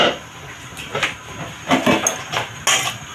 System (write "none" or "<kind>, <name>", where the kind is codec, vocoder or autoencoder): none